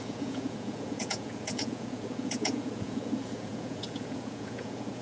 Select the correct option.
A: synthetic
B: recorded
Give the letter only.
A